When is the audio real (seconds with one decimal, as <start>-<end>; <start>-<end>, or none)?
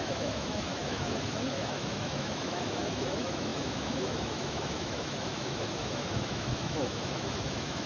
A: none